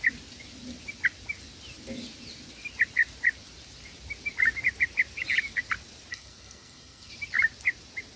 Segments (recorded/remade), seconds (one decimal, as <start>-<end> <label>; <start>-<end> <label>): 0.0-6.1 recorded; 6.1-7.1 remade; 7.1-8.2 recorded